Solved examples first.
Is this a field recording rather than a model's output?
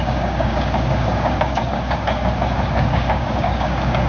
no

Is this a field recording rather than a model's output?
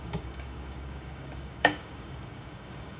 no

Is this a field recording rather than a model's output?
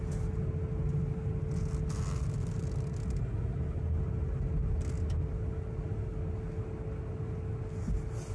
yes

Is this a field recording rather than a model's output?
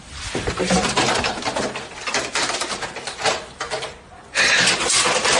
yes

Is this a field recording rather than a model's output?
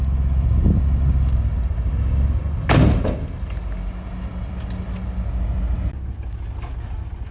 yes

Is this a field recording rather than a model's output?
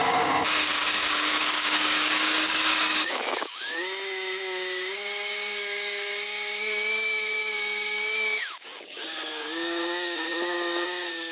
no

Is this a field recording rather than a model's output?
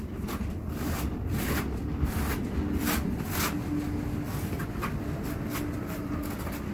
yes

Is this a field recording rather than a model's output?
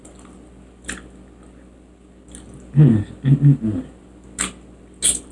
yes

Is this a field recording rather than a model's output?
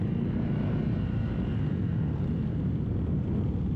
yes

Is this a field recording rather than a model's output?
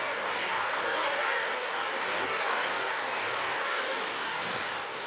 no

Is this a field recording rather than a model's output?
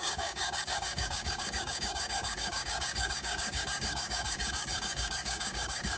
no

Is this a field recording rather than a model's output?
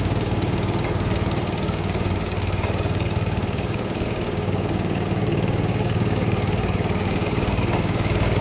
no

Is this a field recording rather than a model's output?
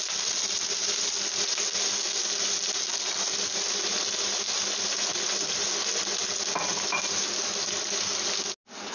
yes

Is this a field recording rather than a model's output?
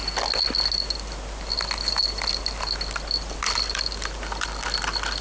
yes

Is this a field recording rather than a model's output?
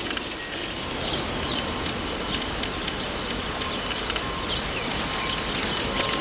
yes